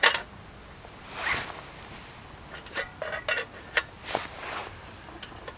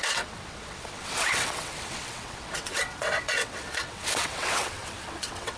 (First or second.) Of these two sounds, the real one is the first